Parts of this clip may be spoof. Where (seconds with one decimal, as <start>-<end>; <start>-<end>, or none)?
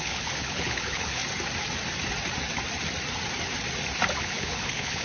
0.0-1.2; 4.2-5.0